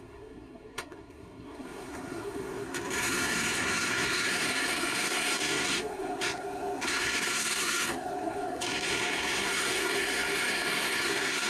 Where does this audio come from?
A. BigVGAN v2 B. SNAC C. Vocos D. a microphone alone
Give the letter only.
B